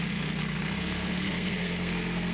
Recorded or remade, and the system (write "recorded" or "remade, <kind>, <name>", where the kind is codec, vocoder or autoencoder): remade, codec, SNAC